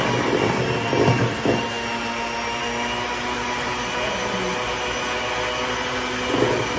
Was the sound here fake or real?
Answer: real